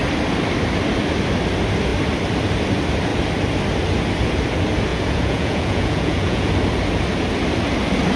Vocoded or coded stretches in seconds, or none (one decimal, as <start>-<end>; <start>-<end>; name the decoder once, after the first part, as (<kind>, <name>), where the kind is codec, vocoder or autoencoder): 4.9-6.5 (vocoder, Vocos)